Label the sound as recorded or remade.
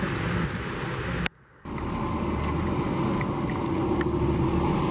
recorded